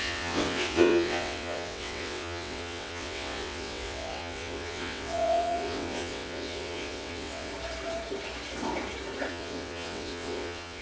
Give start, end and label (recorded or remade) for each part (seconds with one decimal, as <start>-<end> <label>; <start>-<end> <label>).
0.0-7.5 remade; 7.5-9.3 recorded; 9.3-10.8 remade